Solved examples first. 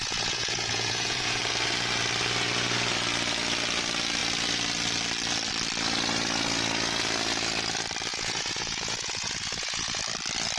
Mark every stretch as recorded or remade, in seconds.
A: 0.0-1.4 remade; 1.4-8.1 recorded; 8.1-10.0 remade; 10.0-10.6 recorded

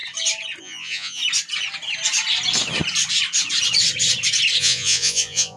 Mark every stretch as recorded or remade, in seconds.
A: 0.0-0.6 recorded; 0.6-1.2 remade; 1.2-4.6 recorded; 4.6-5.6 remade